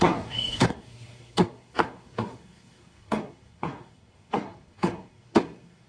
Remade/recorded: remade